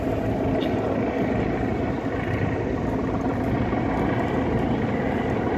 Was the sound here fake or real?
real